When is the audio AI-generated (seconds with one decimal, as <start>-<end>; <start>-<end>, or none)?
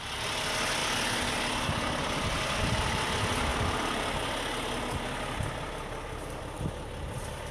none